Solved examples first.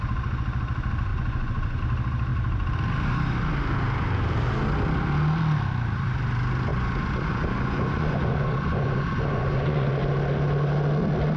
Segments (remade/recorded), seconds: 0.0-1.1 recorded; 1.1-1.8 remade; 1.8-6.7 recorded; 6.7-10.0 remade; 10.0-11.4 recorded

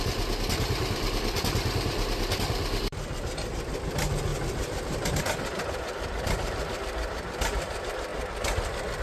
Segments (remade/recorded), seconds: 0.0-8.1 remade; 8.1-9.0 recorded

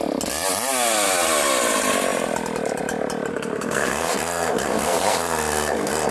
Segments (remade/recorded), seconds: 0.0-3.3 recorded; 3.3-6.1 remade

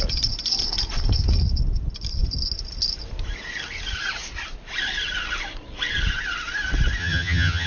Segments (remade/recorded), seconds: 0.0-7.0 recorded; 7.0-7.7 remade

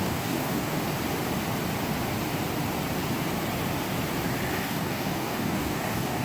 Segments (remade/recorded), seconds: 0.0-0.8 remade; 0.8-4.5 recorded; 4.5-6.2 remade